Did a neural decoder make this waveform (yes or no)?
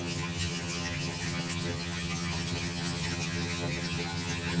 yes